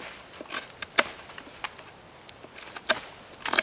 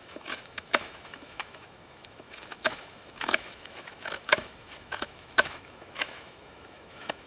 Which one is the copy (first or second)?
second